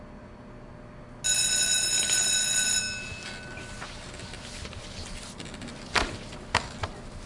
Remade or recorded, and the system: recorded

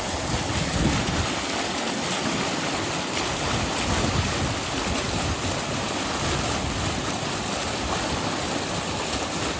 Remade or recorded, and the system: recorded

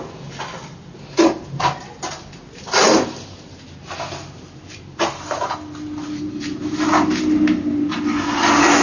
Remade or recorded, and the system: recorded